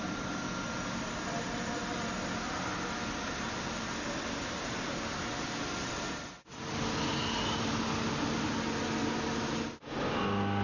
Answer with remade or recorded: recorded